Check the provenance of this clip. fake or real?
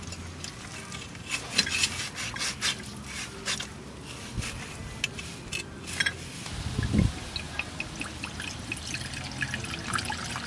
real